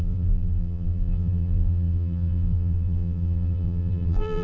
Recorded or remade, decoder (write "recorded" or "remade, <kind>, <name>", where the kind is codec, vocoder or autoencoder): remade, vocoder, BigVGAN v2